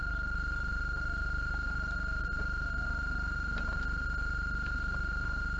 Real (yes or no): yes